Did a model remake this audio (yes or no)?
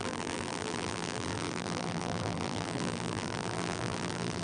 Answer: yes